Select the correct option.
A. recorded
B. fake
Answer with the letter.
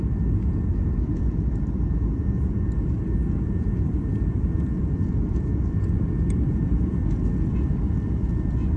B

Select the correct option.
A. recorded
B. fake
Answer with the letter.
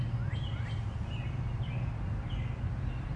A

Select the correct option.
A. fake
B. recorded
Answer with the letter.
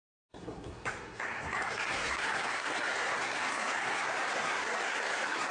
A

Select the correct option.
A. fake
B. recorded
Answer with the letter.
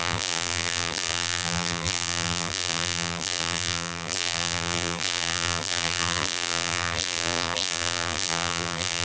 A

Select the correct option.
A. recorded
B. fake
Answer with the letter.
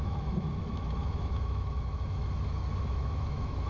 B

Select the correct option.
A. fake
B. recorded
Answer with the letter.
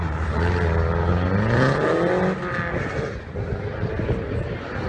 B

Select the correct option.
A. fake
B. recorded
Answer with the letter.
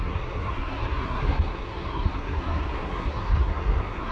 A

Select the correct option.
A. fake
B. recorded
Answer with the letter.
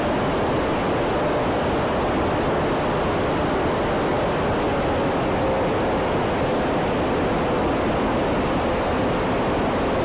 B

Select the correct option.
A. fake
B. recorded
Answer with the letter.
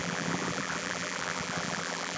A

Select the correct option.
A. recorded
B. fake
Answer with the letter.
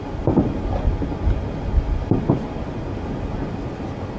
A